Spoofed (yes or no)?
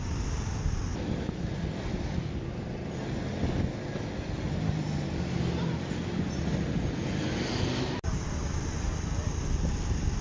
no